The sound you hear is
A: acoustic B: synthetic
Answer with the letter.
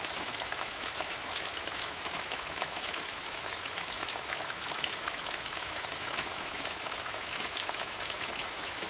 B